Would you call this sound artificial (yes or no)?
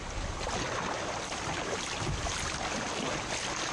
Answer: no